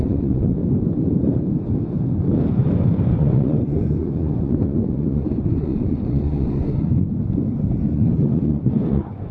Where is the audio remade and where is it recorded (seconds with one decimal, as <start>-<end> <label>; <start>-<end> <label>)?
0.0-0.6 remade; 0.6-3.1 recorded; 3.1-6.9 remade; 6.9-7.9 recorded; 7.9-9.3 remade